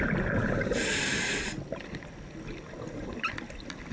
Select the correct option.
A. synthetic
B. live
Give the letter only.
B